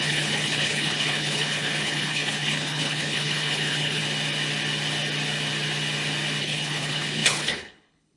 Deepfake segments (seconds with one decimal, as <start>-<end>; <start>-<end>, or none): 0.0-4.0; 6.4-8.2